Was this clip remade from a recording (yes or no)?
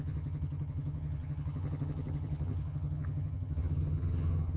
yes